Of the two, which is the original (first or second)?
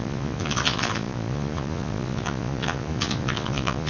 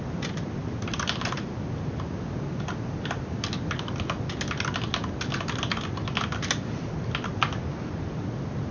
second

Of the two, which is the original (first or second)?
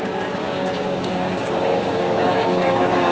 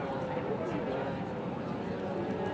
second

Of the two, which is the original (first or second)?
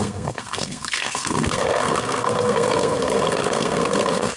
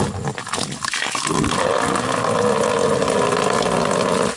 second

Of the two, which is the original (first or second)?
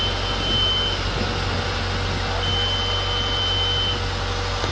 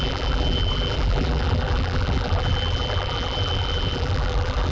first